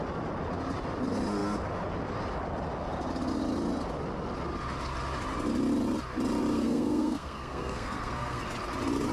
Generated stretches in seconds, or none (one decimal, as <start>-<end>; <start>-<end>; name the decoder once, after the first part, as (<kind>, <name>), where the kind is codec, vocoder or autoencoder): 6.5-8.4 (codec, SNAC)